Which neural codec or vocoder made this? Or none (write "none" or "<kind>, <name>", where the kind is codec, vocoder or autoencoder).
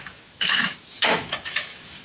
autoencoder, DAC-VAE